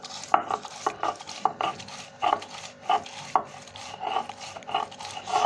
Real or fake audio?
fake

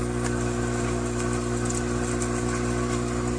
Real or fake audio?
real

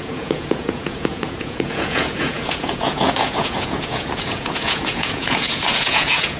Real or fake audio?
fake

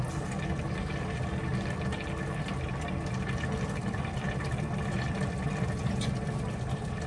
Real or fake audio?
real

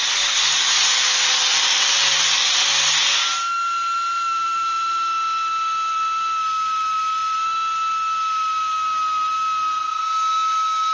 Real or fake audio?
real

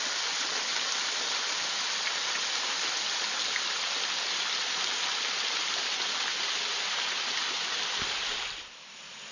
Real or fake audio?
real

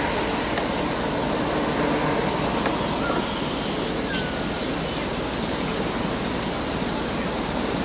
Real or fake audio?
real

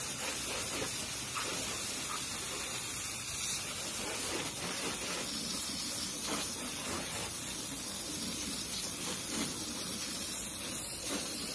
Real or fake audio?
real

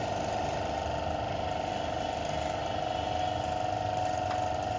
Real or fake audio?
real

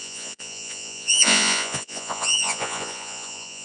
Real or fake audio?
fake